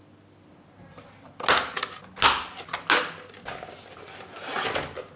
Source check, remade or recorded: recorded